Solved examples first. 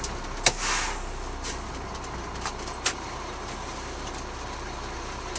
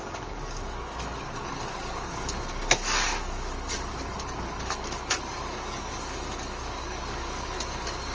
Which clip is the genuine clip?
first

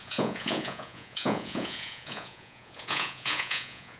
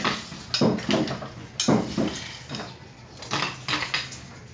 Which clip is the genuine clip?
second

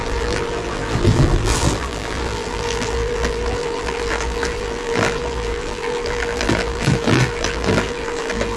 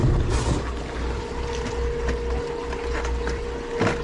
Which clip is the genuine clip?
second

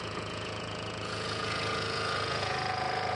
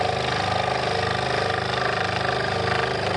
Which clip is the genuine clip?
second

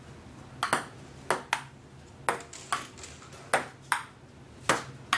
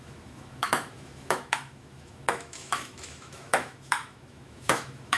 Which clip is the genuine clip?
first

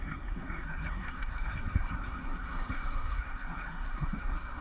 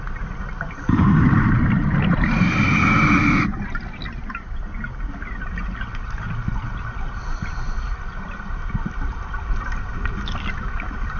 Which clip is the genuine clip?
second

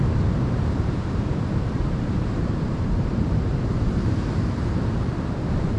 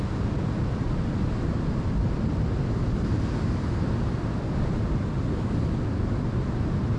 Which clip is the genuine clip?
second